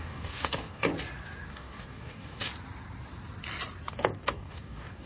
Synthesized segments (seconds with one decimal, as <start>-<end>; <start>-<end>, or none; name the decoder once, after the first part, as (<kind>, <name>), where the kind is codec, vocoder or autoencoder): 0.0-0.9 (codec, DAC); 1.5-2.5; 3.9-5.1